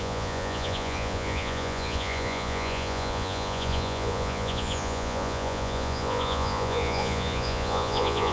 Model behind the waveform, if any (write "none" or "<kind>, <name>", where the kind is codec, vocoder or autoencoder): vocoder, Vocos